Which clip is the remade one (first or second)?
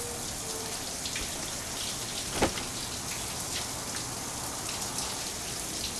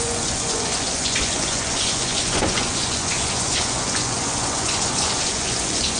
second